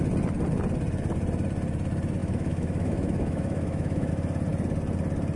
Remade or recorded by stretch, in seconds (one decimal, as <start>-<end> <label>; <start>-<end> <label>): 0.0-2.2 recorded; 2.2-4.1 remade; 4.1-5.4 recorded